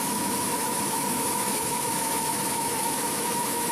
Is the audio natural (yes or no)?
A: no